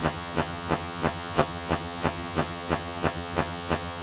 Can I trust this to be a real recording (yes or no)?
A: no